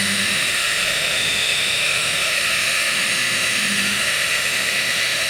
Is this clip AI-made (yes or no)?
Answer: yes